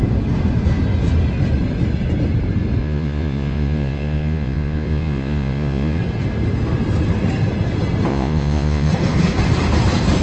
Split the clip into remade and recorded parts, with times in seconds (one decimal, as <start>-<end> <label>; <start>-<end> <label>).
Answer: 0.0-2.8 recorded; 2.8-6.0 remade; 6.0-8.1 recorded; 8.1-8.9 remade; 8.9-10.2 recorded